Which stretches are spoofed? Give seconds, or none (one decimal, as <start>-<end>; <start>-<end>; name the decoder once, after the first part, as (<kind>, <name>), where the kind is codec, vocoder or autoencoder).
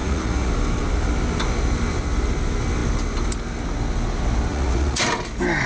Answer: 0.0-0.5 (vocoder, Vocos); 4.5-5.0